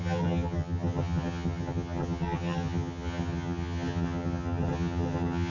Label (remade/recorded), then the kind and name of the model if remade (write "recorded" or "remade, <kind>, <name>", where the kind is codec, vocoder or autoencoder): remade, vocoder, HiFi-GAN